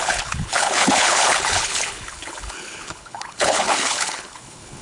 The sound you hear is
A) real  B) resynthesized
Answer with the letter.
B